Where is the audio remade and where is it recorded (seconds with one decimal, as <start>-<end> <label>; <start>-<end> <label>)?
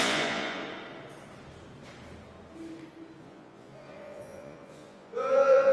0.0-0.6 remade; 0.6-3.2 recorded; 3.2-5.7 remade